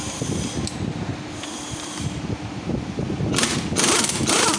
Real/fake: real